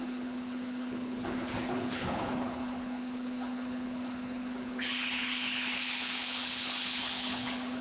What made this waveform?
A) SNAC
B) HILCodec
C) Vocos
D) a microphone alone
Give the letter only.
B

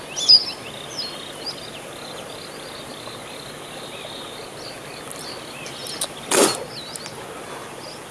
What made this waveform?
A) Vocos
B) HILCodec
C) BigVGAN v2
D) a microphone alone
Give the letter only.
D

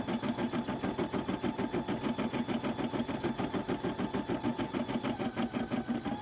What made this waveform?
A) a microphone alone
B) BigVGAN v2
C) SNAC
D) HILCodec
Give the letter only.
A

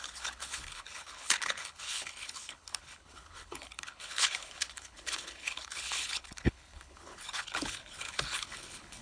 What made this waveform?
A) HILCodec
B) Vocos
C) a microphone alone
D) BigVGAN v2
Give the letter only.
A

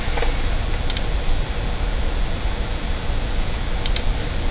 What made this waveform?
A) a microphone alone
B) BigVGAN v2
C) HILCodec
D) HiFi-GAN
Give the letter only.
A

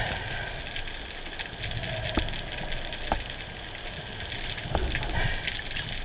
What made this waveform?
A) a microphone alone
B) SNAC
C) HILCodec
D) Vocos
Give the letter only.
A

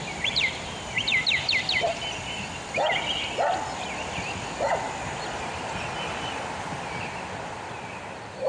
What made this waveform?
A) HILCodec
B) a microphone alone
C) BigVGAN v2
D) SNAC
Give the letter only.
B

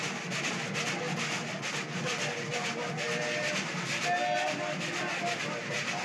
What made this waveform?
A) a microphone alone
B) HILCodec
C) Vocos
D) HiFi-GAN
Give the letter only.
A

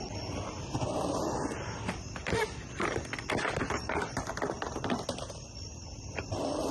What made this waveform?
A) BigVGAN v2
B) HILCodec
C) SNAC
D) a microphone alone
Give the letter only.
D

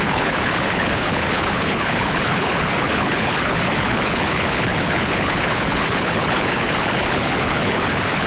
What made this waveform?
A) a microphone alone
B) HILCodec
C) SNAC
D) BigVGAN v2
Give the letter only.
B